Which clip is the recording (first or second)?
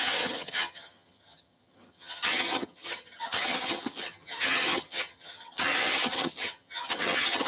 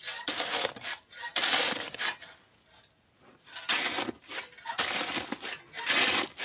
second